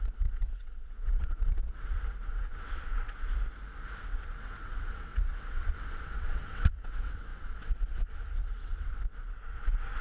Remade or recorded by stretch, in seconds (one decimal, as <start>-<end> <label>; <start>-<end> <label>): 0.0-3.3 remade; 3.3-4.0 recorded; 4.0-10.0 remade